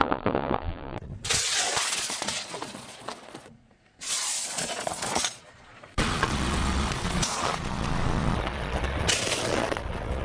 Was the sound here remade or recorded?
remade